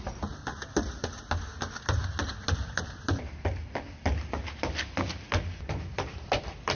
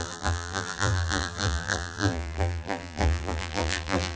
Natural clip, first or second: first